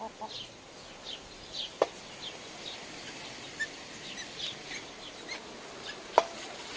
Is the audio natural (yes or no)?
yes